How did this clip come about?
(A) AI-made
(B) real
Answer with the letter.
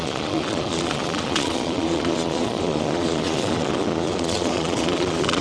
A